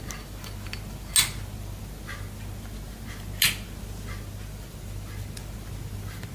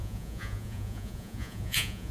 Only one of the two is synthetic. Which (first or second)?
second